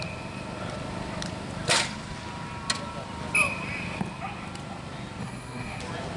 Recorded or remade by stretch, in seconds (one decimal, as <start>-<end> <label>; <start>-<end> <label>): 0.0-5.2 recorded; 5.2-5.8 remade; 5.8-6.2 recorded